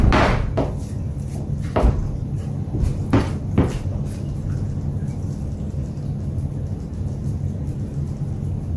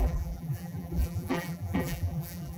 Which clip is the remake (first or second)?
second